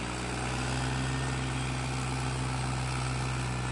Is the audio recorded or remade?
recorded